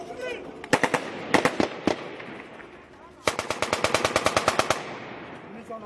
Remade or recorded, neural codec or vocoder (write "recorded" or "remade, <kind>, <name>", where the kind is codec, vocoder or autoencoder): recorded